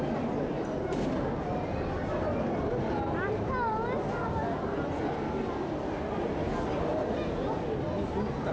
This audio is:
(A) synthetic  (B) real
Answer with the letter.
B